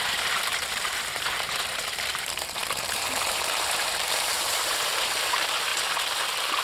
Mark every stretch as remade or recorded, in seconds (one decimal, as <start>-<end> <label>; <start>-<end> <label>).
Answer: 0.0-5.7 remade; 5.7-6.6 recorded